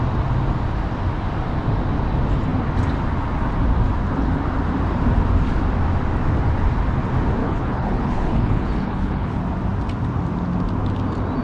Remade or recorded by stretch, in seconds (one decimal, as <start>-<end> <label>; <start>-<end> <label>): 0.0-7.4 recorded; 7.4-9.4 remade; 9.4-11.4 recorded